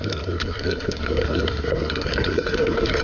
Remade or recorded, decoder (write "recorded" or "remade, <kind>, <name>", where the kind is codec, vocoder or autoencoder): remade, codec, SNAC